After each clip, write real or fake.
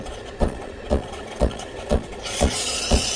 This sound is fake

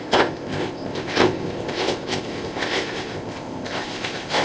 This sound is fake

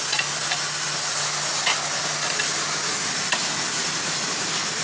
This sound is real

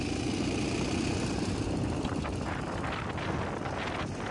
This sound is real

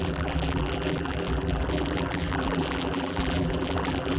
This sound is fake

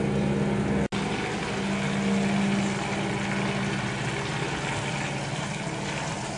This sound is real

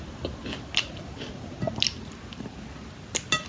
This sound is real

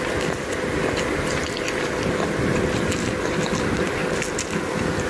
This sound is real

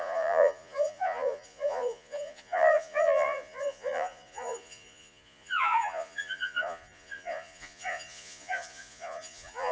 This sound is fake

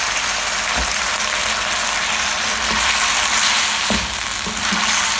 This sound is real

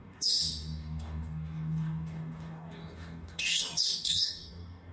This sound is fake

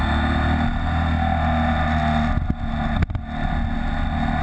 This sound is real